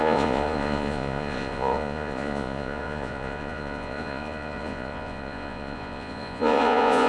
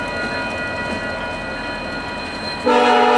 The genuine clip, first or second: second